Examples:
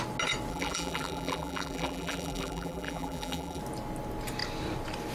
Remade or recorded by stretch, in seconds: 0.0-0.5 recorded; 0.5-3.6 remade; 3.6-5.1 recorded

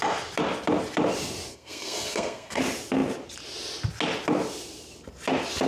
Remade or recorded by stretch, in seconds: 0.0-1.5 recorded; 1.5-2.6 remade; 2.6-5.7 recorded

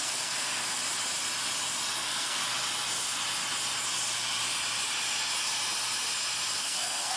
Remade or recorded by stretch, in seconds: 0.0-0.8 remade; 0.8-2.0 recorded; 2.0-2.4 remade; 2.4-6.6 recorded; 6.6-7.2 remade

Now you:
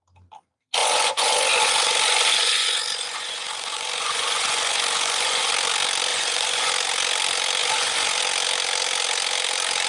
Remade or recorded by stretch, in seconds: 0.0-0.8 recorded; 0.8-5.5 remade; 5.5-6.1 recorded; 6.1-6.7 remade; 6.7-7.6 recorded; 7.6-8.2 remade; 8.2-9.9 recorded